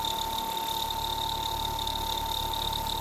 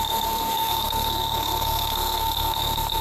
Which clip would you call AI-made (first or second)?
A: second